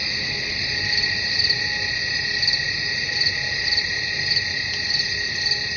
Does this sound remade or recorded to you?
recorded